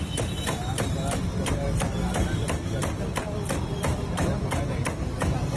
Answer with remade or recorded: recorded